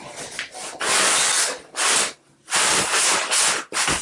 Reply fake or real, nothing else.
real